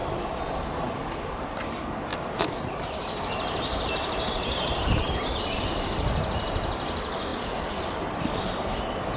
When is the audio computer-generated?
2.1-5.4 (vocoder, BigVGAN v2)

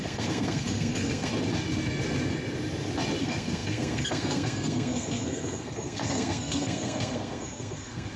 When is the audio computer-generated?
0.0-1.3 (codec, SNAC); 3.2-8.2

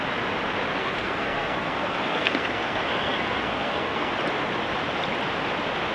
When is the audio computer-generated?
0.8-4.1 (codec, SNAC)

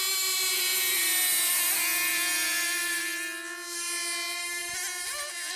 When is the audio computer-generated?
none

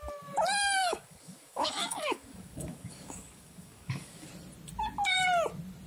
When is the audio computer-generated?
0.8-4.3 (codec, DAC)

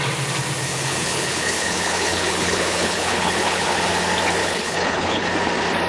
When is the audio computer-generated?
0.7-3.9 (codec, HILCodec); 4.4-5.3